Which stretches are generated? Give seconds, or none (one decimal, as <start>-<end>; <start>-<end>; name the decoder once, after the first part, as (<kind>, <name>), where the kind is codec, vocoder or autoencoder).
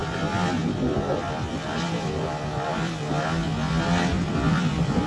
0.0-3.1 (vocoder, BigVGAN v2); 4.1-5.1